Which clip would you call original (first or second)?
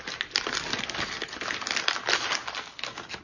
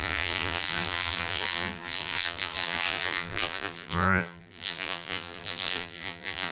first